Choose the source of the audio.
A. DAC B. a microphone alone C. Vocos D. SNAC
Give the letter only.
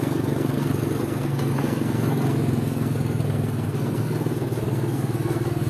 D